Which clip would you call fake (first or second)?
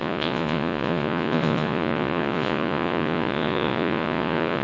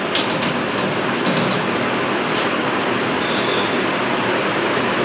first